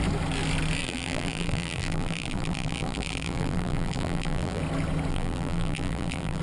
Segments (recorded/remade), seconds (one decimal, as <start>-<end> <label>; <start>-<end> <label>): 0.0-0.8 recorded; 0.8-4.6 remade; 4.6-5.1 recorded; 5.1-6.4 remade